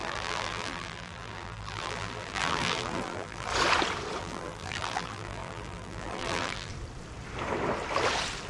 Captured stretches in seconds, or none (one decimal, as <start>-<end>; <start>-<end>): 3.5-4.2; 6.7-8.5